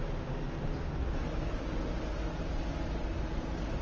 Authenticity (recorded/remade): recorded